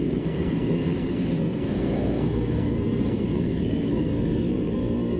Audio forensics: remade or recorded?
remade